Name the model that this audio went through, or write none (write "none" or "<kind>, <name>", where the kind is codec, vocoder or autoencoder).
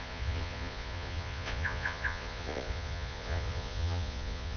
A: vocoder, Vocos